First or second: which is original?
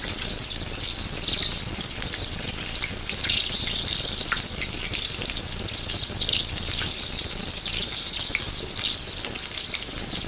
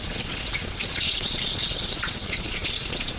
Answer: first